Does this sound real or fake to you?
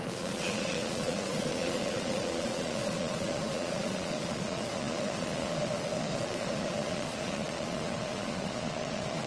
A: fake